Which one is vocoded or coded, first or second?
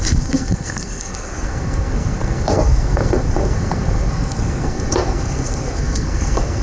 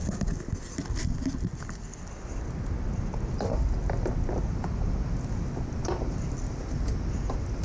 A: first